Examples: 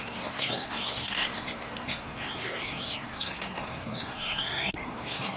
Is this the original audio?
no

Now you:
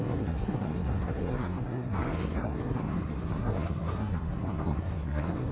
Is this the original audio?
no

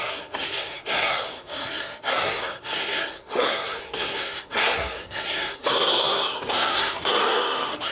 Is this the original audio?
no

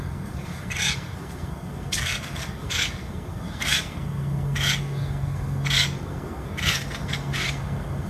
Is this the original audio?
no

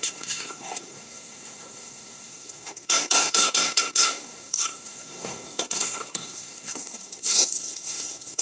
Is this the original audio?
no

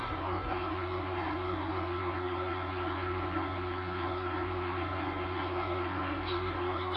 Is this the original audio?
no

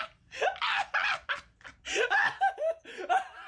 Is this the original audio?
yes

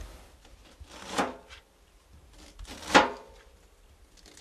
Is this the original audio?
yes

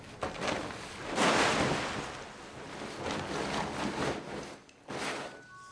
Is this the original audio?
yes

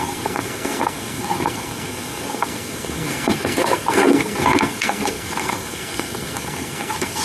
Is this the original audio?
no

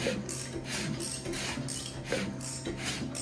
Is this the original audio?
yes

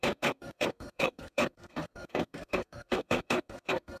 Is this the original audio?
no